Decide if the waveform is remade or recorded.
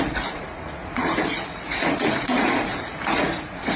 remade